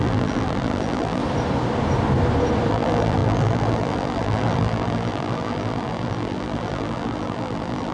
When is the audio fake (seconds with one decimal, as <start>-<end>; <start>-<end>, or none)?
0.0-1.2; 2.7-7.9